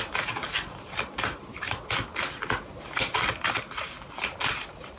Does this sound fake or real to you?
real